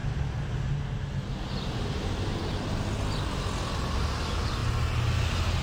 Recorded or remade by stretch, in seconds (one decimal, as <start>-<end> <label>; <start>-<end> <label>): 0.0-5.6 recorded